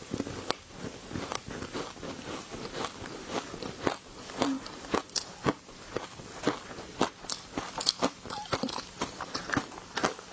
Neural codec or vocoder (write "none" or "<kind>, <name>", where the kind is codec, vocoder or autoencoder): none